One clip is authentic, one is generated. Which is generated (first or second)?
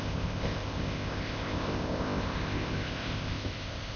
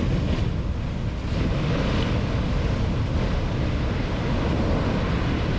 first